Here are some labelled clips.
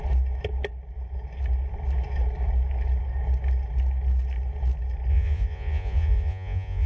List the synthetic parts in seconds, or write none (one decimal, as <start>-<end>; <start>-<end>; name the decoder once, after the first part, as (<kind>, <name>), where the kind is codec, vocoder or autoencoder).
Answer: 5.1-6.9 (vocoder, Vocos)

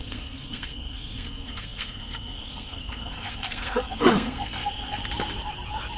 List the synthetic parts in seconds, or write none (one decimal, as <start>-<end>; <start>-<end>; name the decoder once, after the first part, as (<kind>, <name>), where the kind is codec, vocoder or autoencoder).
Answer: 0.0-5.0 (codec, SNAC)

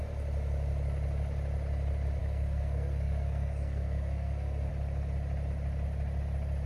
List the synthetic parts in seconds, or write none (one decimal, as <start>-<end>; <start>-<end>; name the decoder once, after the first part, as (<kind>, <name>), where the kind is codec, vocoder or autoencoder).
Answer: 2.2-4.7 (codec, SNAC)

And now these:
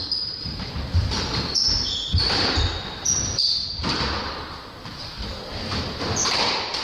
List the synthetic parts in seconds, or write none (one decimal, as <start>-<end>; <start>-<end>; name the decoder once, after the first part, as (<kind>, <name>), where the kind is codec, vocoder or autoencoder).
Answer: 3.8-4.4 (vocoder, BigVGAN v2); 4.9-6.8